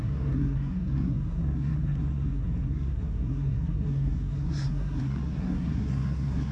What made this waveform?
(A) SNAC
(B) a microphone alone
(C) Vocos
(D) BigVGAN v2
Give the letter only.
A